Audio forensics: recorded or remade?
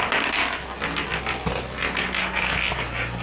recorded